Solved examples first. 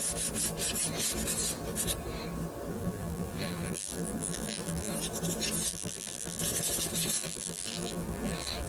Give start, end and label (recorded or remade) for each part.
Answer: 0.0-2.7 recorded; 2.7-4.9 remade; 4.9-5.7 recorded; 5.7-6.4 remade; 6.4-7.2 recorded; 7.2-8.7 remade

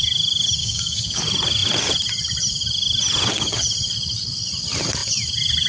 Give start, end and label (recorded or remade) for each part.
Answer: 0.0-0.6 recorded; 0.6-1.2 remade; 1.2-5.7 recorded

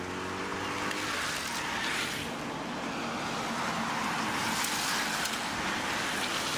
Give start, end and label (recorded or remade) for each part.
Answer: 0.0-6.6 recorded

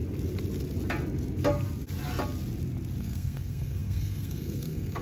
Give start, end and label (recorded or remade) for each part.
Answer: 0.0-3.0 recorded; 3.0-5.0 remade

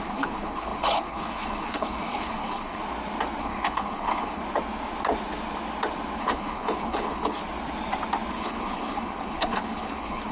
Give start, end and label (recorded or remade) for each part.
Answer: 0.0-2.8 remade; 2.8-3.4 recorded; 3.4-4.4 remade; 4.4-6.2 recorded; 6.2-7.4 remade; 7.4-8.3 recorded; 8.3-10.3 remade

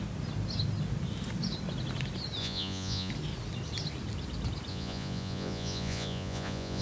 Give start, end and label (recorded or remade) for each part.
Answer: 0.0-2.4 recorded; 2.4-3.1 remade; 3.1-4.7 recorded; 4.7-6.8 remade

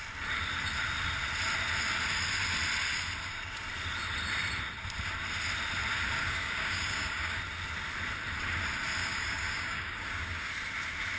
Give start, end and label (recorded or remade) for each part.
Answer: 0.0-6.2 recorded; 6.2-7.4 remade; 7.4-9.0 recorded; 9.0-10.5 remade; 10.5-11.2 recorded

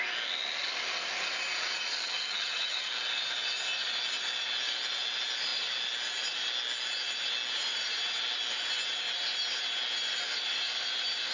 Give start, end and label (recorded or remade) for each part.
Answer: 0.0-1.9 recorded; 1.9-2.9 remade; 2.9-11.3 recorded